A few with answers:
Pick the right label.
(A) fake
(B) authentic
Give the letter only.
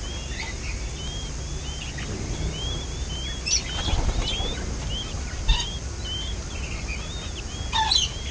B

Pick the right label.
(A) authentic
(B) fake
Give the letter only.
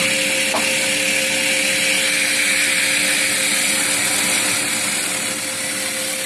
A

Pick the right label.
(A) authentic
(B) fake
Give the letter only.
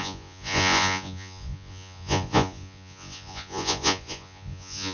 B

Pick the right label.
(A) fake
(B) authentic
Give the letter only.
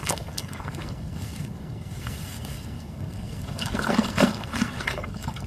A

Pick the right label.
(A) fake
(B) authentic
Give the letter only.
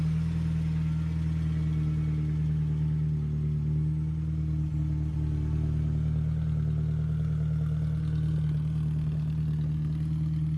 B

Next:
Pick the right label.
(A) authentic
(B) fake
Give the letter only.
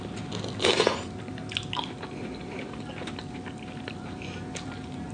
A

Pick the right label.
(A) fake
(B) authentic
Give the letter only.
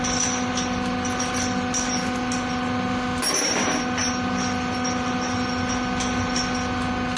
B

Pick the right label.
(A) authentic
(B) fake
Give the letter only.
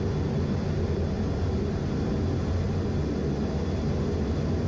A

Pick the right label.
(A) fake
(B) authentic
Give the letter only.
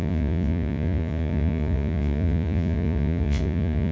A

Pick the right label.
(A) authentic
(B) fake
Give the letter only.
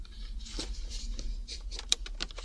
B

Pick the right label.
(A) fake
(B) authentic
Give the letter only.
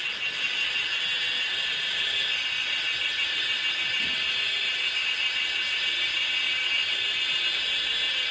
B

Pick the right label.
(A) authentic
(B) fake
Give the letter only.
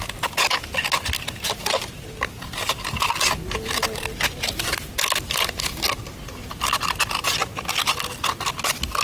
A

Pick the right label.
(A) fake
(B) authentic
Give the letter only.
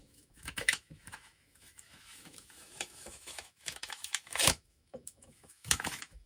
A